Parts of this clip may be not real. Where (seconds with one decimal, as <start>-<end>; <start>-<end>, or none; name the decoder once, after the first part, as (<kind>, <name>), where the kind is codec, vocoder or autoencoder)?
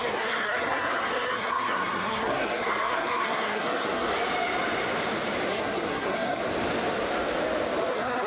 0.0-4.1 (codec, SNAC); 5.5-6.4; 7.9-8.3